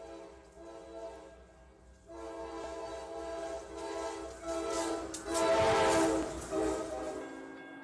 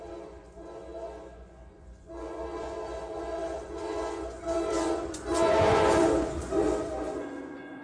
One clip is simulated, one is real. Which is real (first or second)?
first